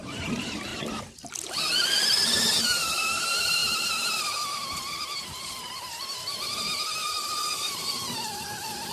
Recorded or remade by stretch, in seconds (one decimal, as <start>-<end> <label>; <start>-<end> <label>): 0.0-0.7 remade; 0.7-2.6 recorded; 2.6-8.9 remade